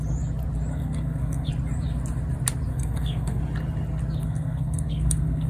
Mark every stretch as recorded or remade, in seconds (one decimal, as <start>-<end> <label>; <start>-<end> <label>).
0.0-0.7 recorded; 0.7-1.5 remade; 1.5-2.7 recorded; 2.7-3.4 remade; 3.4-4.2 recorded; 4.2-5.5 remade